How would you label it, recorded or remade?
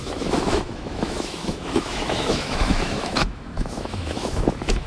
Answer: remade